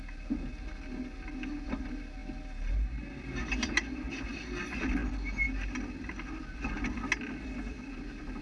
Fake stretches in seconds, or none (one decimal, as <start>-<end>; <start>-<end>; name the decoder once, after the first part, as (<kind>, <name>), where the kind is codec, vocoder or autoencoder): none